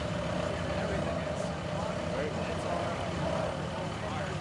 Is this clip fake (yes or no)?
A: no